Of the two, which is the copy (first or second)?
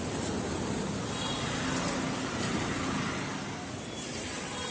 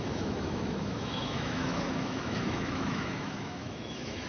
second